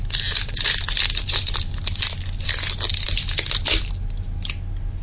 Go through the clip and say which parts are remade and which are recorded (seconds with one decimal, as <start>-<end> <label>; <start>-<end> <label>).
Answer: 0.0-5.0 recorded